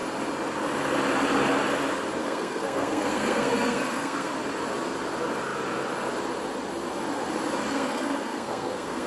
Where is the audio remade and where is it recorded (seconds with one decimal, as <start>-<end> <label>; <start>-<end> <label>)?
0.0-2.2 recorded; 2.2-4.3 remade; 4.3-7.7 recorded; 7.7-9.1 remade